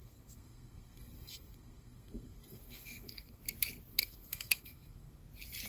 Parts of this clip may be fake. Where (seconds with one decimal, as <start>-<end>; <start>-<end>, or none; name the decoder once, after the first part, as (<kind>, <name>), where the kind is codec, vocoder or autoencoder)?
0.0-3.4 (codec, SNAC); 3.9-5.2